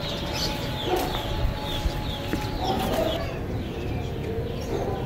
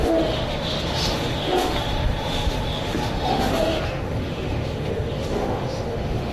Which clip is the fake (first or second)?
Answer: second